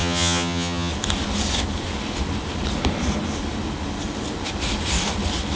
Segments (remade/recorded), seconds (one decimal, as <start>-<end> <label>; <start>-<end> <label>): 0.0-0.9 remade; 0.9-5.6 recorded